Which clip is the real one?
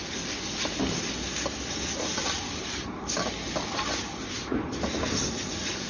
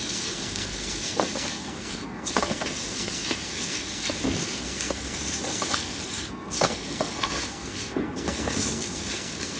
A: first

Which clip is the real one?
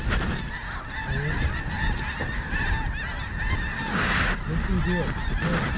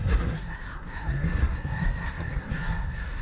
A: first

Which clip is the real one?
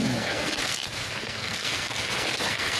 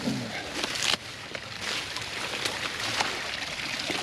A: second